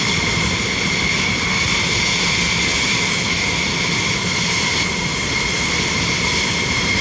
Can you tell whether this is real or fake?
real